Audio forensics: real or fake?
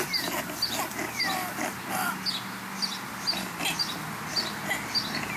real